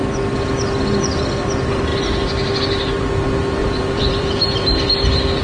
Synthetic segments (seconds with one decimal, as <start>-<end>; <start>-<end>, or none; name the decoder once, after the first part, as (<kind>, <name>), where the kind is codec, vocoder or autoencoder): 3.6-4.8 (vocoder, BigVGAN v2)